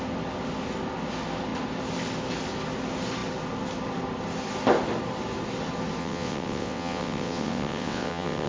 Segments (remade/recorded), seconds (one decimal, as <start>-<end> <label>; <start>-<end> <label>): 0.0-6.0 recorded; 6.0-8.5 remade